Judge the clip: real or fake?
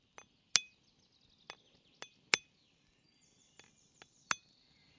real